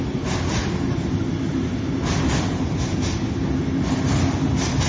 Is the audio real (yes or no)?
yes